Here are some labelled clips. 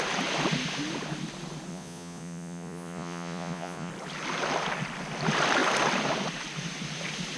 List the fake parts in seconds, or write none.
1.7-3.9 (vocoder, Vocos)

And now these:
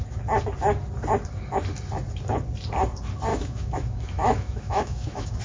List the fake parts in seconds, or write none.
3.3-5.4 (autoencoder, DAC-VAE)

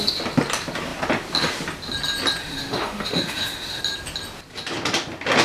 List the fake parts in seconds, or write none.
2.4-3.8 (autoencoder, DAC-VAE)

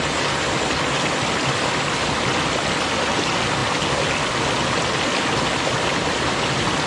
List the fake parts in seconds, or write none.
none

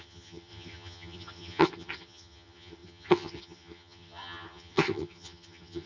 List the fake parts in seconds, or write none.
0.0-5.9 (vocoder, HiFi-GAN)

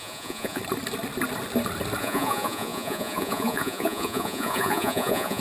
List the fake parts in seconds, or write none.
0.0-0.6 (vocoder, Vocos); 2.0-5.4

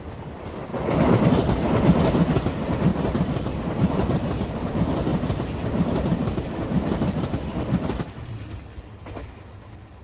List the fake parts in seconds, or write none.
0.0-2.9 (vocoder, BigVGAN v2); 3.5-5.1; 6.4-10.0